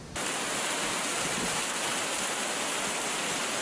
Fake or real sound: real